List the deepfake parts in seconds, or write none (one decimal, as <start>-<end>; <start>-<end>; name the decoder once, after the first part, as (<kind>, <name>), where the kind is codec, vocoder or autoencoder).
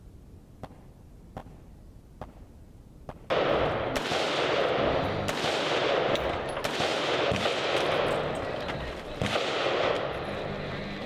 none